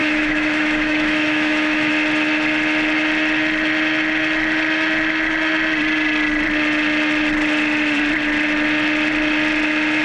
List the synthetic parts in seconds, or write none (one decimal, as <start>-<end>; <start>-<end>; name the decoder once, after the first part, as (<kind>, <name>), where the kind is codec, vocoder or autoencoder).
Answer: 0.0-1.9 (autoencoder, DAC-VAE)